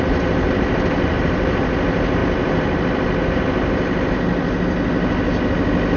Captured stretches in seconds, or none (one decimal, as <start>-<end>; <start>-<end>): 0.0-6.0